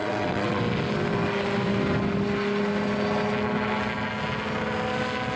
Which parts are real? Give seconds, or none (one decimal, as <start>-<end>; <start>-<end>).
0.6-5.4